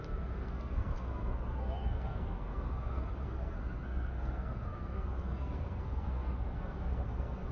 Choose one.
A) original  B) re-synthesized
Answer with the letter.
B